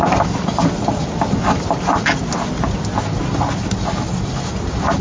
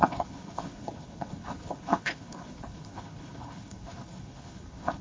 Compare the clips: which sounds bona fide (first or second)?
first